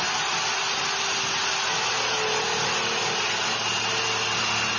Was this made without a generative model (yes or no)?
yes